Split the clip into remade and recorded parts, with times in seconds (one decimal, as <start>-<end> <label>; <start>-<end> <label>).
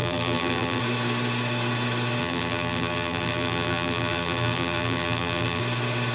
0.0-0.8 remade; 0.8-2.2 recorded; 2.2-5.6 remade; 5.6-6.1 recorded